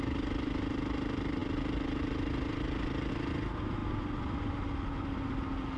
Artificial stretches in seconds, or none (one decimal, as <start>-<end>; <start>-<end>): none

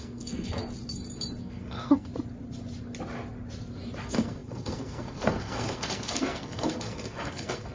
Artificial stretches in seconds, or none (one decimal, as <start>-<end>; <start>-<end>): 0.0-0.6; 1.4-2.1; 4.0-7.7

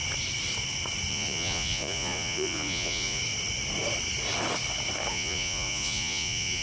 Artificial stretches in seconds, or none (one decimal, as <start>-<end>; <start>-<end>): 1.1-3.2; 5.1-6.6

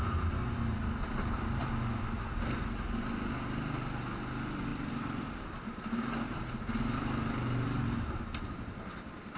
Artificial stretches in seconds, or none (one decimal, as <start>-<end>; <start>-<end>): 4.7-5.7

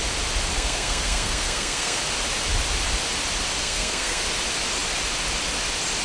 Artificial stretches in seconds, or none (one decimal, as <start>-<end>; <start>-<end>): 0.5-2.0; 3.6-4.2

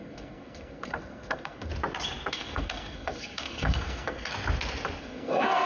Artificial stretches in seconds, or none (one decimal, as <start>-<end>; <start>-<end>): 0.0-1.7; 2.3-4.3; 5.0-5.7